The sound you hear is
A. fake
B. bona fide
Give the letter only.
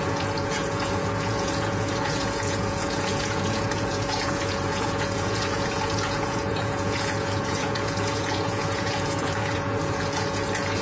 A